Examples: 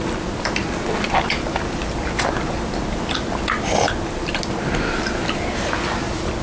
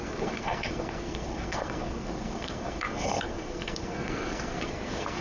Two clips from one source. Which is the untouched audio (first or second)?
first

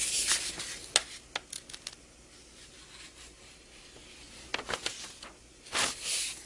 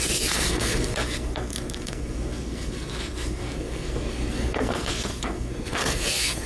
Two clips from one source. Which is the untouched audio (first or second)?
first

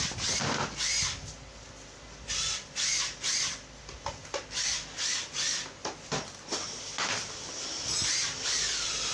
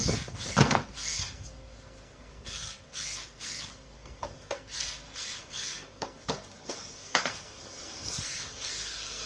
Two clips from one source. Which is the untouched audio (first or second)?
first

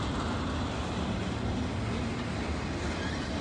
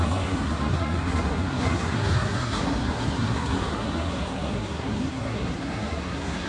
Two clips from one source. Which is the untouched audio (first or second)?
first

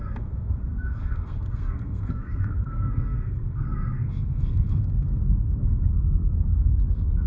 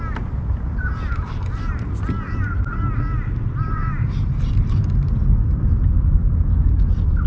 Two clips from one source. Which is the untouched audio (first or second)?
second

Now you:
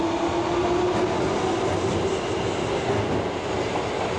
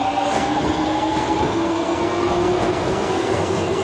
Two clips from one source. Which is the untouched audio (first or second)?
first